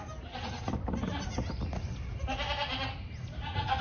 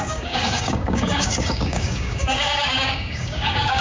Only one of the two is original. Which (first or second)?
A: first